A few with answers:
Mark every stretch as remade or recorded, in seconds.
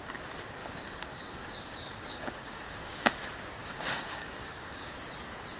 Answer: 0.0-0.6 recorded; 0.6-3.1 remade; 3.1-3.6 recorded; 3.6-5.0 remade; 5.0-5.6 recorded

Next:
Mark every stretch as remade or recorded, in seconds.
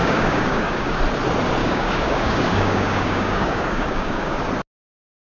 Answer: 0.0-1.0 remade; 1.0-1.6 recorded; 1.6-4.4 remade; 4.4-5.3 recorded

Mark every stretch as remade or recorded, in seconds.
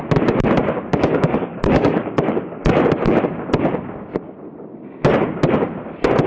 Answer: 0.0-0.9 recorded; 0.9-3.2 remade; 3.2-6.3 recorded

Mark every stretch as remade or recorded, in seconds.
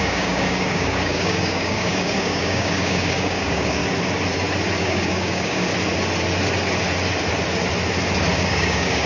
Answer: 0.0-3.8 remade; 3.8-4.8 recorded; 4.8-5.7 remade; 5.7-8.4 recorded; 8.4-9.1 remade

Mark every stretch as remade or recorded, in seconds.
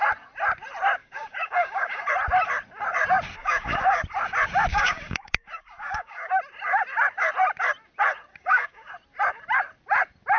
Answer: 0.0-1.0 recorded; 1.0-2.0 remade; 2.0-3.4 recorded; 3.4-4.0 remade; 4.0-4.7 recorded; 4.7-6.3 remade; 6.3-8.3 recorded; 8.3-8.9 remade; 8.9-10.4 recorded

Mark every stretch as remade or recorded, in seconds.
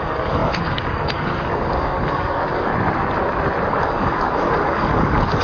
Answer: 0.0-2.7 remade; 2.7-3.7 recorded; 3.7-5.4 remade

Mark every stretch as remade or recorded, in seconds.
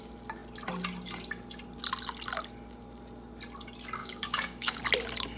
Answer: 0.0-4.0 recorded; 4.0-4.8 remade; 4.8-5.4 recorded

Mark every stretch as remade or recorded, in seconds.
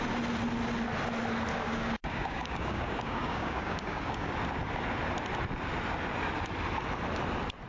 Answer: 0.0-1.5 recorded; 1.5-4.3 remade; 4.3-7.7 recorded